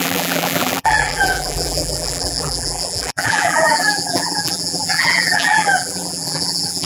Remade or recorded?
remade